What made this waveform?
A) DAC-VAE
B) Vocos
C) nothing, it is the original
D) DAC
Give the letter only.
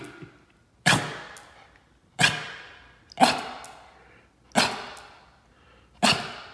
C